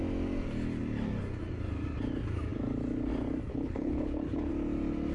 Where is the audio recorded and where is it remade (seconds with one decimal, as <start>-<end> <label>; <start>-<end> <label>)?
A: 0.0-3.5 recorded; 3.5-4.5 remade; 4.5-5.1 recorded